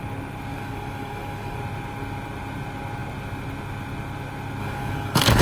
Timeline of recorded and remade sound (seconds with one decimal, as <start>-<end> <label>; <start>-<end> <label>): 0.0-0.5 recorded; 0.5-1.6 remade; 1.6-4.6 recorded; 4.6-5.4 remade